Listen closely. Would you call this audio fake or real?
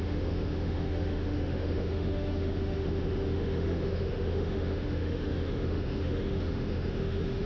fake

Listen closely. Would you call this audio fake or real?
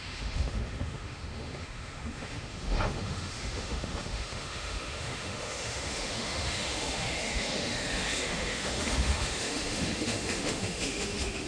fake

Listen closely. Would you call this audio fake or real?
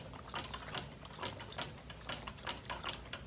real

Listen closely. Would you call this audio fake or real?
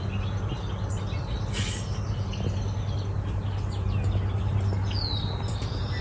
real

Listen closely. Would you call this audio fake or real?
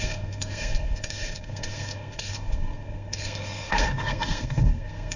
fake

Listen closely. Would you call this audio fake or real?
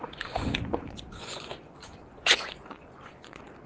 fake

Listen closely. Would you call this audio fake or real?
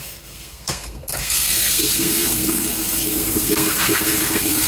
fake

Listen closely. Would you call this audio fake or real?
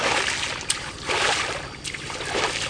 real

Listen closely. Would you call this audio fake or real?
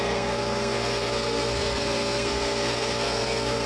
fake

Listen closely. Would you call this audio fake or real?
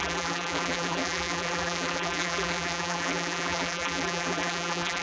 fake